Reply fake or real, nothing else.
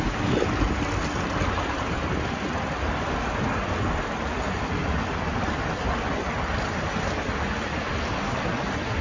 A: real